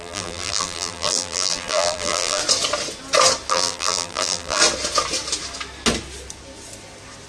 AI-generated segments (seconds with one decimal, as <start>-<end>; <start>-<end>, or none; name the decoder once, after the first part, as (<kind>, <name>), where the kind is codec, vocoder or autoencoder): 0.0-2.4 (vocoder, BigVGAN v2); 3.5-4.6